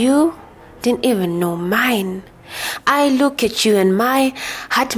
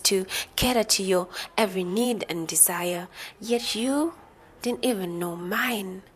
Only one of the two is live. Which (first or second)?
first